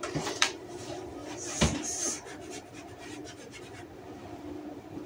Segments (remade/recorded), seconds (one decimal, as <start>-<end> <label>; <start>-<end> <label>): 0.0-5.1 remade